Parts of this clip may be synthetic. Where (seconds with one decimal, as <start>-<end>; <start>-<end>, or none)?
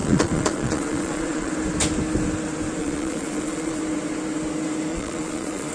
0.0-1.5; 2.8-3.8; 4.9-5.7